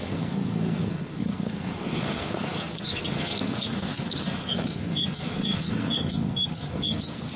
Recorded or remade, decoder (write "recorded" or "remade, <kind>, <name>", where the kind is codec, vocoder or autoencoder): remade, codec, SNAC